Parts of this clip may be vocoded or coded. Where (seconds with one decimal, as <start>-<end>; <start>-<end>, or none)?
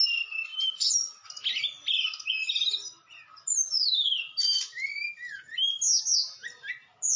none